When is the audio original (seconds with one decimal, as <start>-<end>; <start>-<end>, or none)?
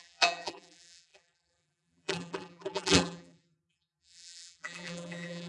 none